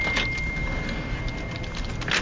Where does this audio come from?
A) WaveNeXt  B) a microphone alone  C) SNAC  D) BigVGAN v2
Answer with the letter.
B